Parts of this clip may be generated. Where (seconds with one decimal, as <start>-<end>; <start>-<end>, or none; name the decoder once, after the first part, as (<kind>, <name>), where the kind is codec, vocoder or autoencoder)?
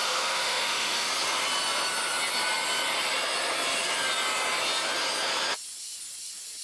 0.0-1.1 (autoencoder, DAC-VAE)